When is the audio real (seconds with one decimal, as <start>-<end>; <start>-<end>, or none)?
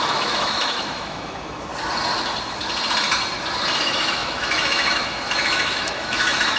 1.7-3.8